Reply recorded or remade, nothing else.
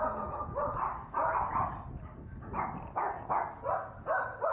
recorded